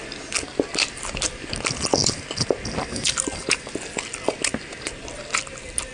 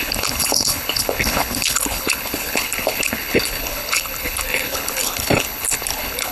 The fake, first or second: second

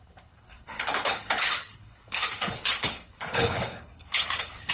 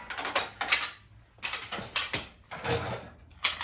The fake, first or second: first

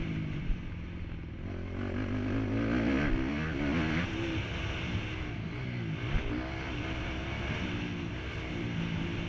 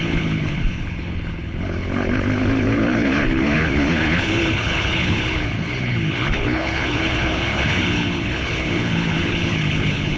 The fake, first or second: second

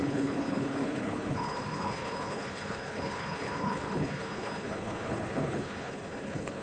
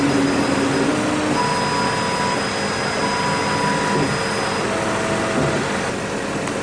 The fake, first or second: first